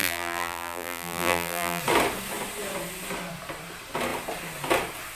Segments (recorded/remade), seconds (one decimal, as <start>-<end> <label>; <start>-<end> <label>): 0.0-1.8 remade; 1.8-5.1 recorded